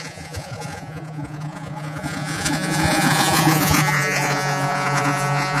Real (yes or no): no